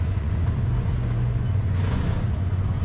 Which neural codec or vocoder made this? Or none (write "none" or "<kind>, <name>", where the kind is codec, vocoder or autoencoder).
vocoder, Vocos